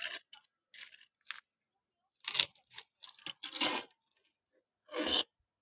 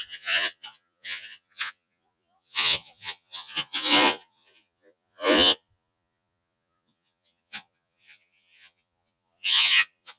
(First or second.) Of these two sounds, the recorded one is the first